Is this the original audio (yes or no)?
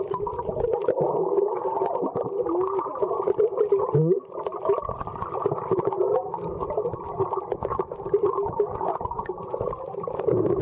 yes